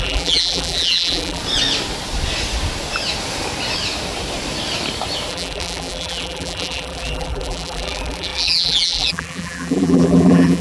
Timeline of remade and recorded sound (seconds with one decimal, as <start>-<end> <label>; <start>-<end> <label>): 0.0-1.4 remade; 1.4-5.3 recorded; 5.3-10.6 remade